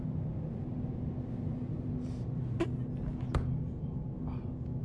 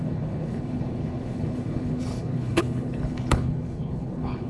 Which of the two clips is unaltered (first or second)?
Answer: first